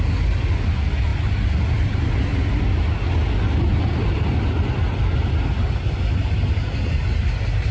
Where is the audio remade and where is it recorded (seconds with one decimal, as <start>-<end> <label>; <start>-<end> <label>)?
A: 0.0-7.7 recorded